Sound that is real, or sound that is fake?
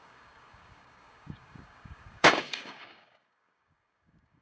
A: fake